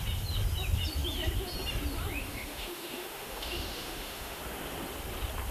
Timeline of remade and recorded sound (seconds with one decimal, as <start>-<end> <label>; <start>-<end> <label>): 0.0-2.2 recorded; 2.2-4.4 remade; 4.4-5.5 recorded